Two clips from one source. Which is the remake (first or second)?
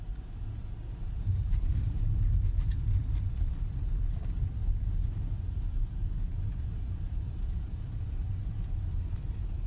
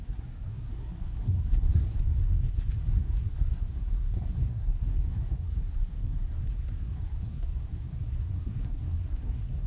second